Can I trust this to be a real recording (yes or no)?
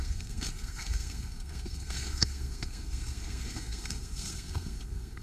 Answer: no